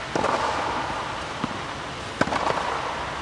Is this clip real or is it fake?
real